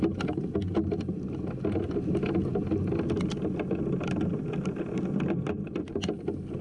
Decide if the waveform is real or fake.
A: real